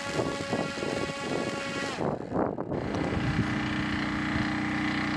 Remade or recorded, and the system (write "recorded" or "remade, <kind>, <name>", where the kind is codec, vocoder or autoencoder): recorded